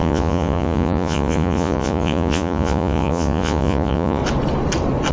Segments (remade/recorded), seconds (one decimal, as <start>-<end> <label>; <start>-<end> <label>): 0.0-4.2 remade; 4.2-5.1 recorded